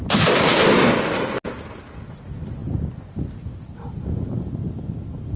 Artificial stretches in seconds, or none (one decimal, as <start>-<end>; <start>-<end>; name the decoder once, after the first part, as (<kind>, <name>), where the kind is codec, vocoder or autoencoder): none